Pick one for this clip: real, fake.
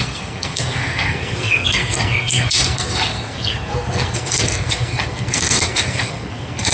fake